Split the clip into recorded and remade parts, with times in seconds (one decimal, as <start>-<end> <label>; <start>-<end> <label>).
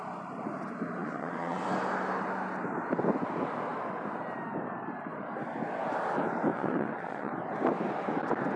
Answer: 0.0-1.0 recorded; 1.0-1.6 remade; 1.6-6.5 recorded; 6.5-7.3 remade; 7.3-8.6 recorded